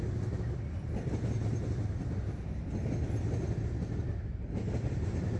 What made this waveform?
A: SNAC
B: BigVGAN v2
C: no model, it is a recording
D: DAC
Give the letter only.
C